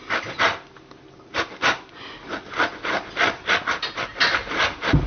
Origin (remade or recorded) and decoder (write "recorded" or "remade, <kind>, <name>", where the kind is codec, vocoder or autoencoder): recorded